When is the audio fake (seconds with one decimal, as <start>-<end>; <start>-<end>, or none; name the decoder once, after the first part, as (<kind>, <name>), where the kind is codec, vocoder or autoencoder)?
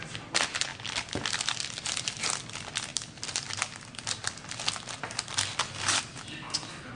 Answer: none